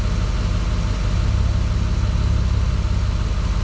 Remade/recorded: recorded